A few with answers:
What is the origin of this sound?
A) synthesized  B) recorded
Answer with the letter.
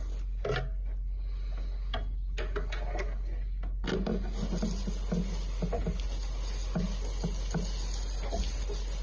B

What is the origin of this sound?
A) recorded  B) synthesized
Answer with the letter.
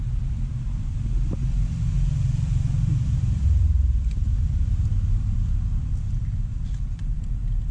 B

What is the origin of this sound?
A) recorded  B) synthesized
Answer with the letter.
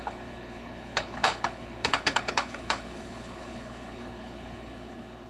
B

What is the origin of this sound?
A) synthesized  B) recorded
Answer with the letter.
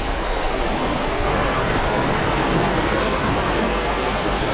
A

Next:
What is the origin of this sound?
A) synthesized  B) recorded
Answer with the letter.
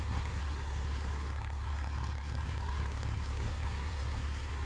A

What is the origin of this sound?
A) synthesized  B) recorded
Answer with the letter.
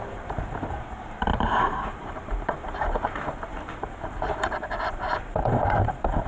A